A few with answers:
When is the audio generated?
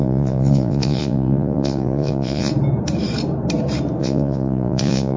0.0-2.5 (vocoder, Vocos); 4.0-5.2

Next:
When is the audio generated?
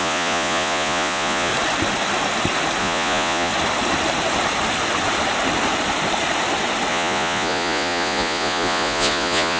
0.0-1.5 (vocoder, Vocos); 2.8-3.5; 6.9-9.6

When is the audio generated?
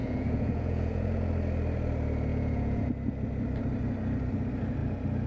0.0-1.3 (vocoder, Vocos); 2.3-2.9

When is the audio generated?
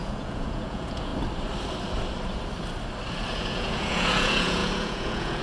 0.0-1.1 (vocoder, Vocos); 3.3-5.4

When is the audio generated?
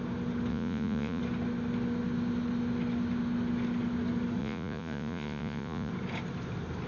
0.5-1.2 (vocoder, Vocos); 4.4-5.9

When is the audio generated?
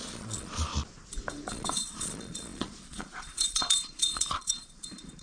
0.0-0.7 (vocoder, Vocos); 1.5-5.2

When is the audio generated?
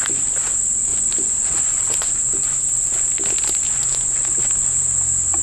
0.9-2.2 (vocoder, Vocos); 3.8-4.4